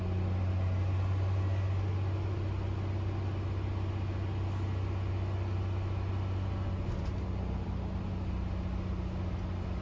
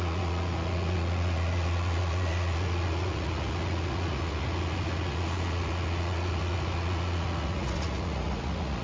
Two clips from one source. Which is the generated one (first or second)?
second